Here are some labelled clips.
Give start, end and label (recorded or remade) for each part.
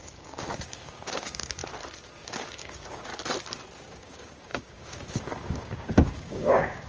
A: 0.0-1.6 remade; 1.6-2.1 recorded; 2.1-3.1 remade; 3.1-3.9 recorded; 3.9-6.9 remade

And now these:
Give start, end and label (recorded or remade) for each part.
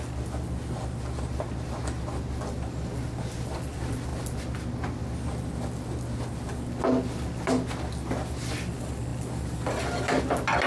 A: 0.0-10.7 recorded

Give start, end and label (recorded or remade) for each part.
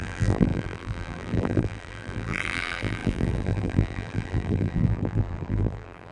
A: 0.0-6.1 remade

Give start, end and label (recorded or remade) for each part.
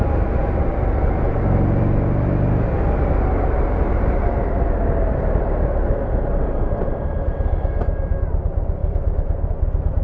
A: 0.0-10.0 recorded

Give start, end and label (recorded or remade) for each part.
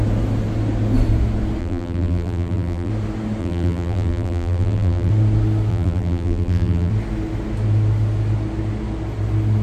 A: 0.0-1.6 recorded; 1.6-2.9 remade; 2.9-3.4 recorded; 3.4-5.1 remade; 5.1-5.7 recorded; 5.7-6.9 remade; 6.9-9.6 recorded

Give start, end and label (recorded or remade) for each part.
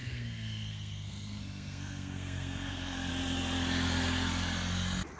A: 0.0-3.1 remade; 3.1-5.2 recorded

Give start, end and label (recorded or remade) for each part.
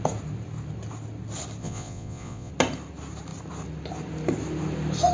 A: 0.0-1.6 recorded; 1.6-2.5 remade; 2.5-5.1 recorded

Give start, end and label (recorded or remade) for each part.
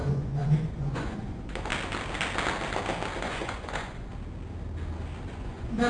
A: 0.0-1.7 remade; 1.7-3.2 recorded; 3.2-4.1 remade; 4.1-5.3 recorded; 5.3-5.9 remade